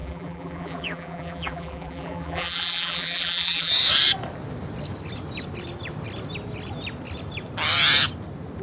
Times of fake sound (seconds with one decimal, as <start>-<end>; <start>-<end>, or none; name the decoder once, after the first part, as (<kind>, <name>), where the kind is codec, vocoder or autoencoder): 0.0-3.7 (vocoder, BigVGAN v2)